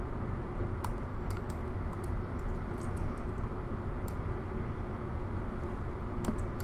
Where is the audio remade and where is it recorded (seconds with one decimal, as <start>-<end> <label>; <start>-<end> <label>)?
0.0-1.1 recorded; 1.1-1.6 remade; 1.6-6.6 recorded